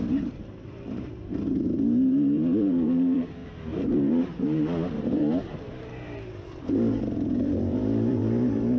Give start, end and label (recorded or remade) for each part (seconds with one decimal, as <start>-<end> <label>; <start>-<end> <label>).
0.0-8.8 remade